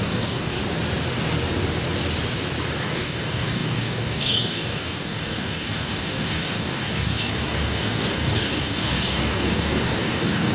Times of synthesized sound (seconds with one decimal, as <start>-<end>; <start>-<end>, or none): 0.0-0.6; 2.8-10.5